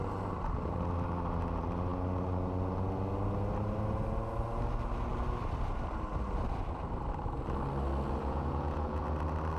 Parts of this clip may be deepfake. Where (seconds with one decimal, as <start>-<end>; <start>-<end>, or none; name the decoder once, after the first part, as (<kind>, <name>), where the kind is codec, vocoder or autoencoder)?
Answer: 8.2-9.0 (vocoder, Vocos)